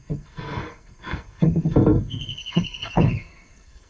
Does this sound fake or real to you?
fake